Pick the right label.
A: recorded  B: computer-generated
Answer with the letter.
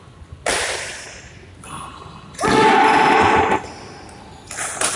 A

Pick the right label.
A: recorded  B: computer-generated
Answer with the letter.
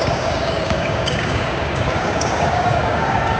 B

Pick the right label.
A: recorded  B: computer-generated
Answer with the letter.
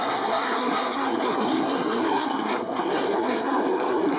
B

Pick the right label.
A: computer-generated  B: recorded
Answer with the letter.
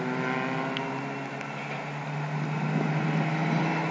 B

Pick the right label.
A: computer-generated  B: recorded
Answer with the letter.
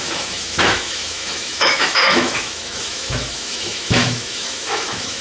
A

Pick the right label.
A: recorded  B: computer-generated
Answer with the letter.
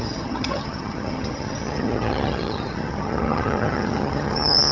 B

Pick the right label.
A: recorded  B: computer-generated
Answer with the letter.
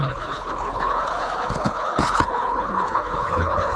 B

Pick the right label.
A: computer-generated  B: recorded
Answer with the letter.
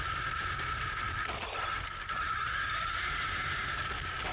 B